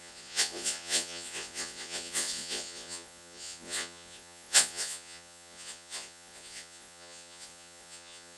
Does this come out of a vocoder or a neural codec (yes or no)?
yes